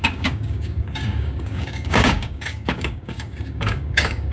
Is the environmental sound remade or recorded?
remade